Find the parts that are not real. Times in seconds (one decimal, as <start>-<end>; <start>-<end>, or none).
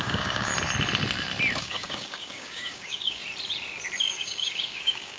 0.0-0.5; 1.6-3.2; 4.0-5.2